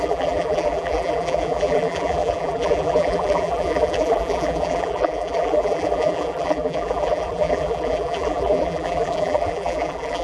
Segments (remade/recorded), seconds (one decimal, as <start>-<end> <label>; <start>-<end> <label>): 0.0-10.2 remade